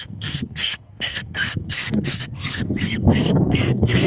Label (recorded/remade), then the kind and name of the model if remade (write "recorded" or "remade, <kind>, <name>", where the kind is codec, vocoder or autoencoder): remade, codec, SNAC